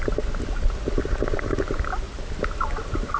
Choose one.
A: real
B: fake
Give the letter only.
A